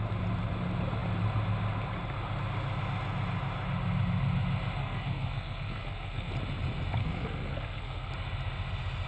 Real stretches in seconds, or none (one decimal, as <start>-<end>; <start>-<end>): 0.0-4.8; 6.3-7.0; 8.1-9.1